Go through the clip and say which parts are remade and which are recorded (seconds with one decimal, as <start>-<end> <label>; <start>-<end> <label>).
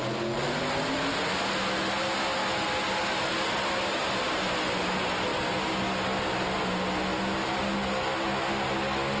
0.0-9.2 recorded